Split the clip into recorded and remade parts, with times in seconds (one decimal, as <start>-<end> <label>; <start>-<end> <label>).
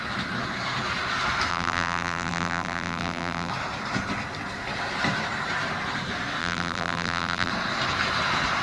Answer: 0.0-1.5 recorded; 1.5-3.5 remade; 3.5-6.4 recorded; 6.4-7.5 remade; 7.5-8.6 recorded